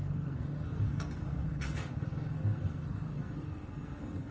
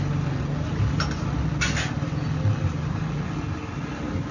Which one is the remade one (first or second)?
first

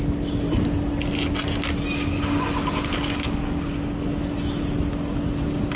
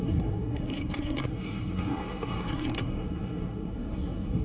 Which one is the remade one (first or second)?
second